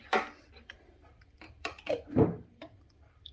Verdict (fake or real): fake